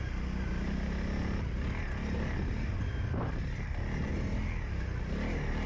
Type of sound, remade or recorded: recorded